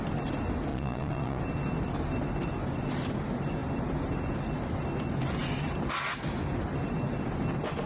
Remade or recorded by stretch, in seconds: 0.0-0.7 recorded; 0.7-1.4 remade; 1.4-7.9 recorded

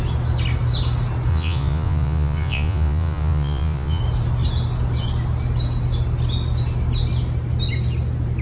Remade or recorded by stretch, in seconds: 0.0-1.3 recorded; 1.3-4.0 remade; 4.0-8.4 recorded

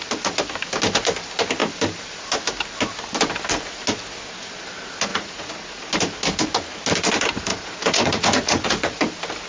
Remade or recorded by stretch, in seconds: 0.0-5.1 recorded; 5.1-5.8 remade; 5.8-7.5 recorded; 7.5-9.0 remade; 9.0-9.5 recorded

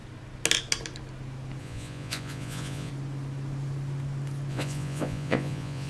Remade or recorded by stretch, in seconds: 0.0-1.6 recorded; 1.6-2.9 remade; 2.9-4.5 recorded; 4.5-5.9 remade

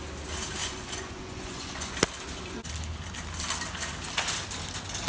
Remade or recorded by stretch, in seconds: 0.0-0.6 recorded; 0.6-1.9 remade; 1.9-5.1 recorded